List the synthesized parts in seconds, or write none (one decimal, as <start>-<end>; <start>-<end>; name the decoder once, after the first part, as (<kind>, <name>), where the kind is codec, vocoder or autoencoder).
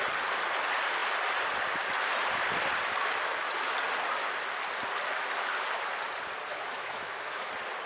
6.5-7.5 (autoencoder, DAC-VAE)